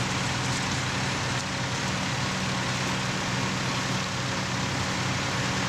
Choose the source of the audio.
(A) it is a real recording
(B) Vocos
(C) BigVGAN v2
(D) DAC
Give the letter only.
A